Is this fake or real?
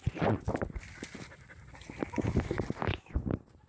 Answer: real